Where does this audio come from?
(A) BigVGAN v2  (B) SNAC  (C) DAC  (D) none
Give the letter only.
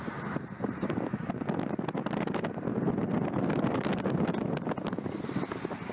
D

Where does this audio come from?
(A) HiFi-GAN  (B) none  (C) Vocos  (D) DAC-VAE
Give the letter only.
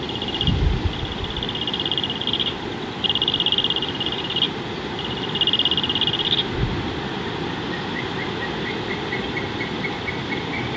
B